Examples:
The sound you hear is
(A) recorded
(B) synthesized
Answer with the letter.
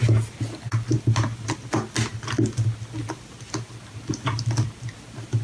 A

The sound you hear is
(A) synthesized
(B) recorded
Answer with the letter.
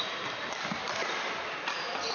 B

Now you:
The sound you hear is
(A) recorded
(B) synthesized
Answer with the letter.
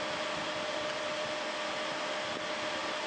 A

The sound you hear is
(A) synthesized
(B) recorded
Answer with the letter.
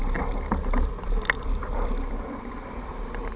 A